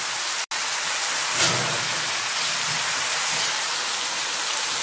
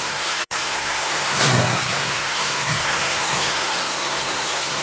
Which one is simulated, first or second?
second